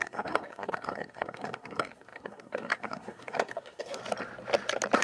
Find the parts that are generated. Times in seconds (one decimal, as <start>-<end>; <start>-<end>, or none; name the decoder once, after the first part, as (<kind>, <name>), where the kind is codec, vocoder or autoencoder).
0.0-4.0 (codec, SNAC)